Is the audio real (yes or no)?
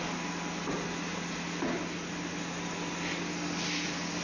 yes